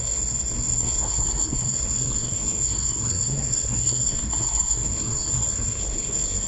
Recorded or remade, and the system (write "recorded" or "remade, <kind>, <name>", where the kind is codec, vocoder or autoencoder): remade, codec, SNAC